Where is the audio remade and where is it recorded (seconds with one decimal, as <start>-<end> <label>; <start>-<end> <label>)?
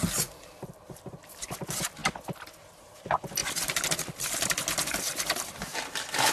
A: 0.0-2.0 remade; 2.0-2.8 recorded; 2.8-6.3 remade